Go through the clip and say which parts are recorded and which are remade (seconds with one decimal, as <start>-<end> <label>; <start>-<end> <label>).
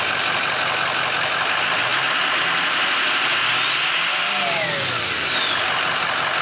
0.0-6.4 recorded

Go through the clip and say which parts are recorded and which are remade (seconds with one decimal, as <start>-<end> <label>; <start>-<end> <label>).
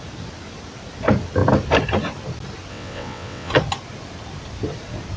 0.0-2.7 recorded; 2.7-3.5 remade; 3.5-5.2 recorded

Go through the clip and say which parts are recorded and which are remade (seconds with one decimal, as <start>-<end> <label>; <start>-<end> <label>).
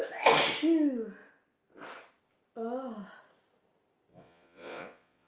0.0-4.1 recorded; 4.1-5.3 remade